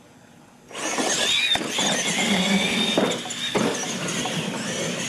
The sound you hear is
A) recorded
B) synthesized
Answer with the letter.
A